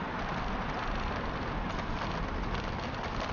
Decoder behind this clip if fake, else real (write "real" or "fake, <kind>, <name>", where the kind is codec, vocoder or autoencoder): real